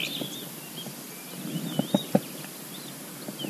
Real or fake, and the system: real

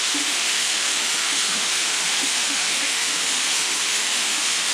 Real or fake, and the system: fake, autoencoder, DAC-VAE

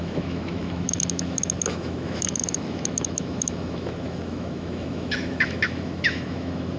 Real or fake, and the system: fake, autoencoder, DAC-VAE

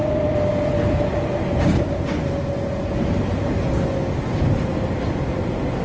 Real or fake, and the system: real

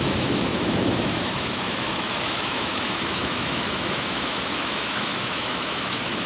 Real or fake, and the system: fake, autoencoder, DAC-VAE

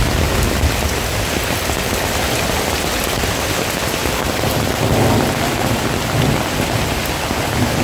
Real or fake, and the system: real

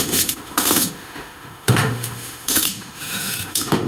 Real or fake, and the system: fake, autoencoder, DAC-VAE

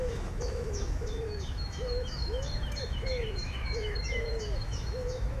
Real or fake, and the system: fake, autoencoder, DAC-VAE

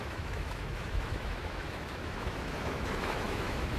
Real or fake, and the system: fake, autoencoder, DAC-VAE